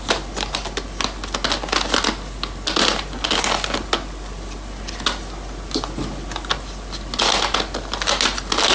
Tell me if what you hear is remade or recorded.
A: recorded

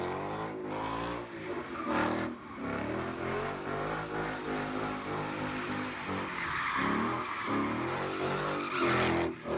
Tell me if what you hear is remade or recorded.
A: recorded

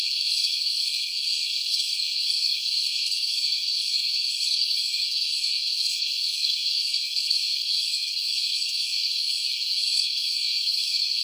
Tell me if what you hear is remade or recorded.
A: remade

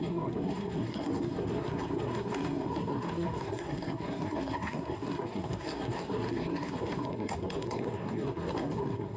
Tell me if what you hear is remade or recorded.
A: remade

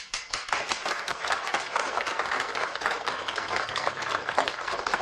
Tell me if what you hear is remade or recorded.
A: remade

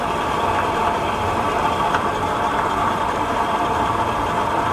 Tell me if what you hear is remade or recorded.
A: remade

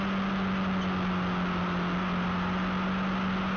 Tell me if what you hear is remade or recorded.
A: recorded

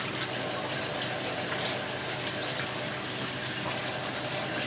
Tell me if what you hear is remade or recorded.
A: recorded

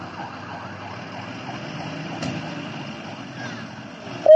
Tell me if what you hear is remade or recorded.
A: recorded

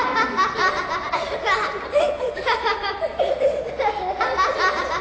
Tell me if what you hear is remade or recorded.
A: recorded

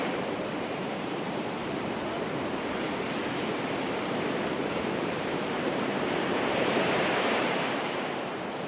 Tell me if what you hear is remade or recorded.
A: remade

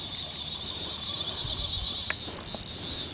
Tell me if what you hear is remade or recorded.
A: recorded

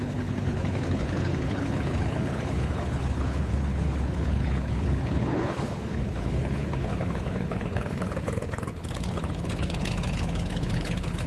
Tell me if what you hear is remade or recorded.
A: remade